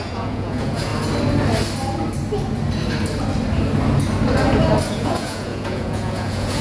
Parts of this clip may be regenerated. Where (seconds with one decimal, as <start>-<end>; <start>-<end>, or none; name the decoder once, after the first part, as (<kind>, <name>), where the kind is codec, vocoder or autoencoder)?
0.0-0.9 (vocoder, Vocos); 4.9-6.6

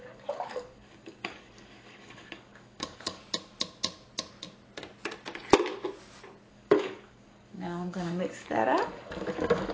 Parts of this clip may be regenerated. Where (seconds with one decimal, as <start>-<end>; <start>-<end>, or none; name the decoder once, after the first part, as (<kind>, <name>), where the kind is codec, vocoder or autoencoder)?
0.0-3.2 (codec, DAC); 6.5-9.7

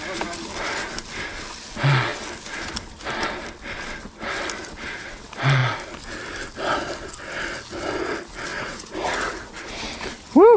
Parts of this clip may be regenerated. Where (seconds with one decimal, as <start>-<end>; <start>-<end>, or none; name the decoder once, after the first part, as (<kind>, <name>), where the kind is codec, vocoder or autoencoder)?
8.5-9.8 (vocoder, Vocos)

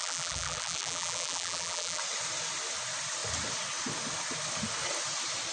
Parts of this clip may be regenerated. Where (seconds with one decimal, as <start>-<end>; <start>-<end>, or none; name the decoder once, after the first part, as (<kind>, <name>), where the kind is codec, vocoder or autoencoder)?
0.0-2.0 (vocoder, BigVGAN v2)